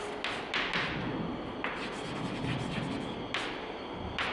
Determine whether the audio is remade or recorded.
recorded